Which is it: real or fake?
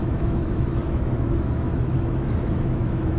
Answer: fake